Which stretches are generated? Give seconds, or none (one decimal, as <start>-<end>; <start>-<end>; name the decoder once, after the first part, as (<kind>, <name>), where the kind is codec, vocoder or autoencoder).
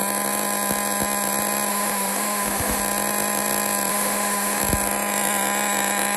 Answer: 1.7-2.8 (autoencoder, DAC-VAE); 3.9-4.6